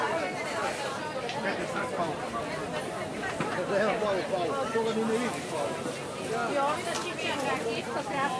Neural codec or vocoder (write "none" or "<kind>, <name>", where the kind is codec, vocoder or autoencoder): none